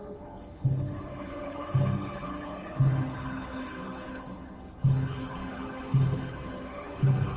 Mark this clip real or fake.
fake